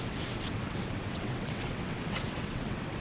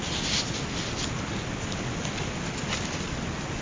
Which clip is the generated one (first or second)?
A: first